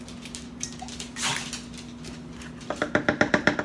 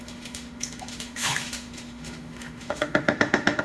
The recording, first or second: first